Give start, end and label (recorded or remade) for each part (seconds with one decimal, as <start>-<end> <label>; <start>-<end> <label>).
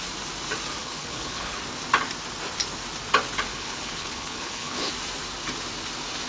0.0-0.8 recorded; 0.8-1.6 remade; 1.6-3.5 recorded; 3.5-4.9 remade; 4.9-6.3 recorded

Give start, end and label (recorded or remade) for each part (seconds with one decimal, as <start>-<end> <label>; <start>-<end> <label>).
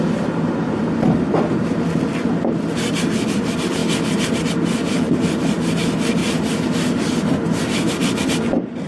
0.0-8.9 recorded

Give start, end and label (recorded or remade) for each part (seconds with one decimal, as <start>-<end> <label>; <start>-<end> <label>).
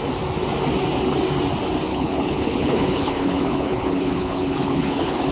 0.0-1.9 recorded; 1.9-5.3 remade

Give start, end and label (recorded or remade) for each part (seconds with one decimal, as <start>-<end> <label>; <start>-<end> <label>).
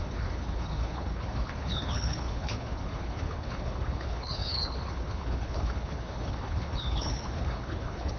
0.0-8.2 remade